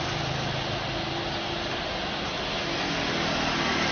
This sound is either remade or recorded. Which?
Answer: recorded